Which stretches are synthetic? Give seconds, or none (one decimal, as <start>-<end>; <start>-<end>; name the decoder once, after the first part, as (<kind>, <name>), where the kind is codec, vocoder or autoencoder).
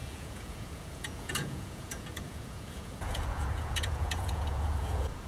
0.0-5.3 (vocoder, Vocos)